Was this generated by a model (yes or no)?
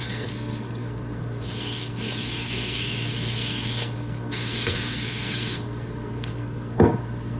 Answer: yes